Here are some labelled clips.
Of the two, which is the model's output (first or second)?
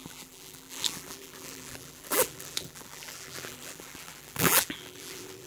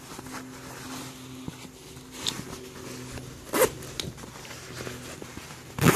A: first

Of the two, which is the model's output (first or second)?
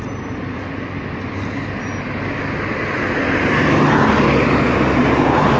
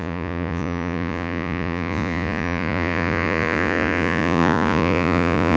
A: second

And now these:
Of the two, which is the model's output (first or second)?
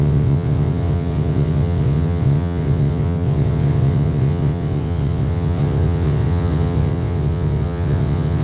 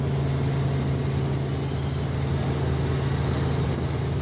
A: first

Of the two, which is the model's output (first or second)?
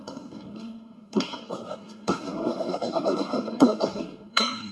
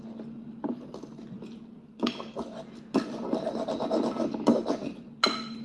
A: first